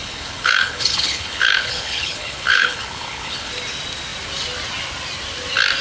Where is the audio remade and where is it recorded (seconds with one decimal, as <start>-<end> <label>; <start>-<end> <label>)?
0.0-3.5 remade; 3.5-5.8 recorded